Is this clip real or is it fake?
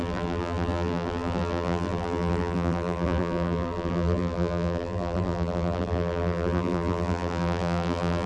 fake